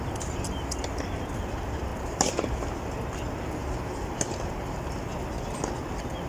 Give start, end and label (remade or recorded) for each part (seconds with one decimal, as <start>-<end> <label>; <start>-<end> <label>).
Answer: 0.0-6.3 recorded